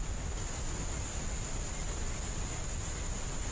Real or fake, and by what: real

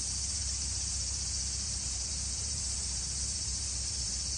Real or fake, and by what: fake, vocoder, BigVGAN v2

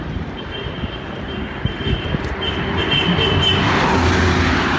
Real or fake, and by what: real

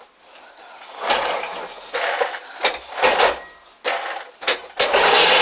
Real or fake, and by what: real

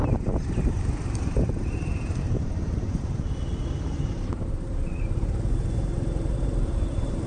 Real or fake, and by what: fake, vocoder, BigVGAN v2